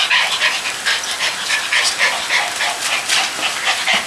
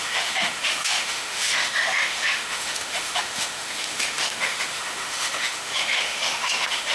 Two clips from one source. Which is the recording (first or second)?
first